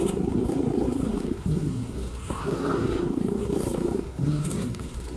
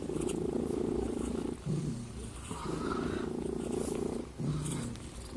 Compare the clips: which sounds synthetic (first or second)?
first